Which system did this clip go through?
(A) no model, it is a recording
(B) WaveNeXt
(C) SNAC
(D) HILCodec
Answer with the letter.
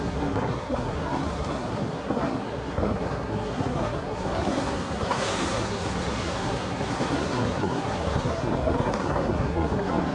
C